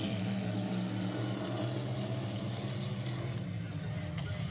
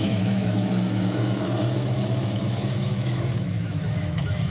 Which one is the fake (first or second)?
second